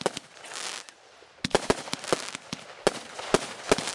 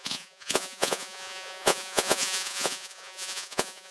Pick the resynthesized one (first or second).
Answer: second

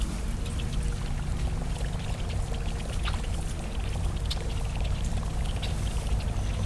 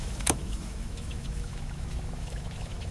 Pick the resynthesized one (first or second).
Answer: second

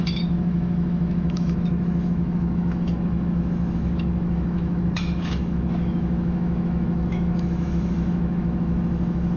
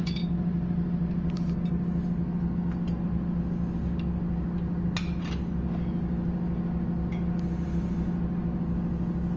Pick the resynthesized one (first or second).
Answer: first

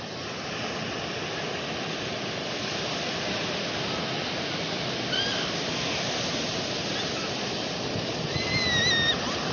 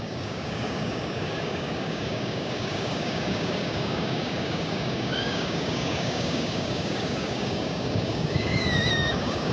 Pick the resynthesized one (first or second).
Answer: second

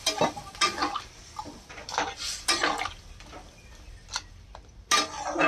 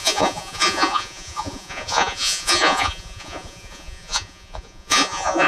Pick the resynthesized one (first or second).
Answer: second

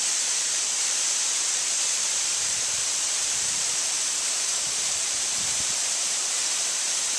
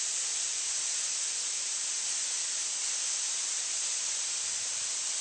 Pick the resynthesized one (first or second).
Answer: first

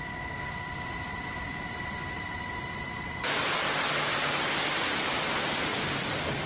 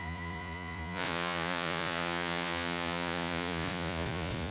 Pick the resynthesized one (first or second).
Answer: second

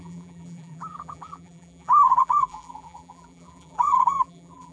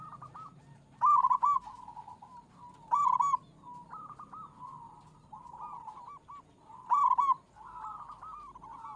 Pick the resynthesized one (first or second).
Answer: first